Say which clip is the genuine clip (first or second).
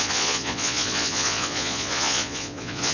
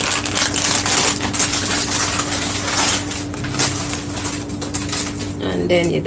second